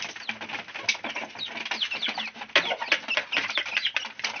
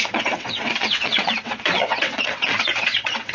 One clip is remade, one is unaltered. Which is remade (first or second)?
second